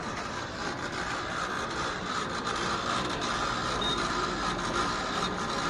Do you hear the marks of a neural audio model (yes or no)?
yes